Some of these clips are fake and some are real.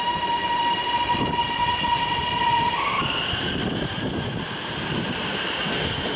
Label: fake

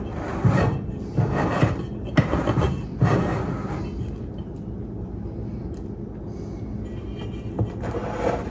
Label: real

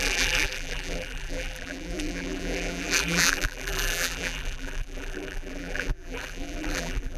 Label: fake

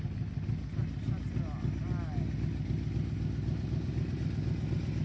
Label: real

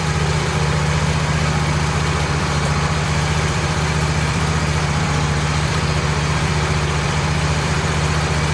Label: fake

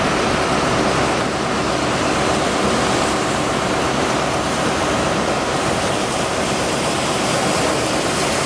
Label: real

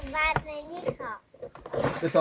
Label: fake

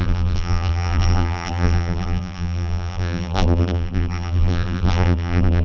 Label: fake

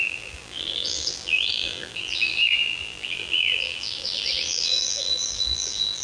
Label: fake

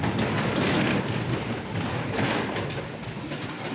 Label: real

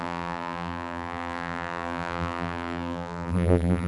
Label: fake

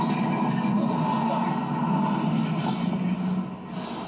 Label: real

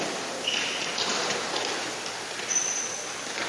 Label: real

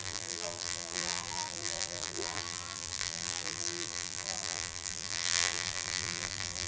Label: fake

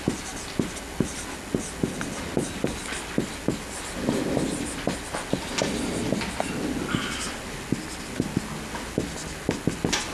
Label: real